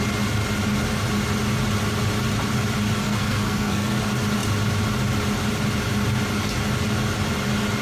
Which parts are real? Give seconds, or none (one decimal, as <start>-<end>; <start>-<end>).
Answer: 0.0-3.0; 4.0-7.8

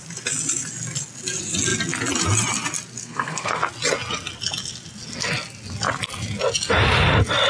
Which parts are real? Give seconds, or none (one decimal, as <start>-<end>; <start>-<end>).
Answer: 0.0-3.0; 3.6-7.5

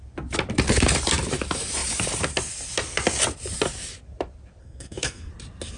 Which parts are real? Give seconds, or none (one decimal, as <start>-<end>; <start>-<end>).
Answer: 0.0-4.6; 5.3-5.8